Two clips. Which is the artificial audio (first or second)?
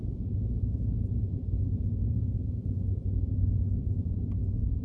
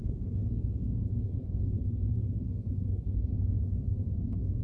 second